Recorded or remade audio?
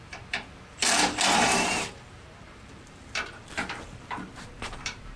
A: remade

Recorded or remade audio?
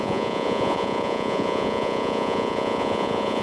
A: remade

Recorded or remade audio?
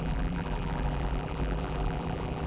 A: remade